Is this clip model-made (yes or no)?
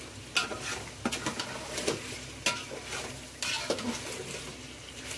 no